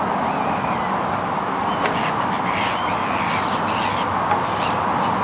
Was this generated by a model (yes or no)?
no